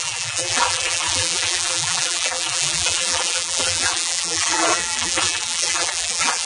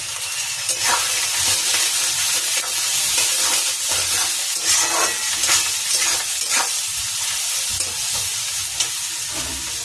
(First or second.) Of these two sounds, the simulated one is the first